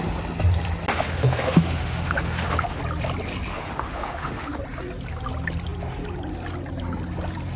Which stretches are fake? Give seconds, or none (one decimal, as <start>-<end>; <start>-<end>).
0.9-2.8; 3.5-4.6